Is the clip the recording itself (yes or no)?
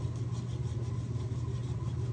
yes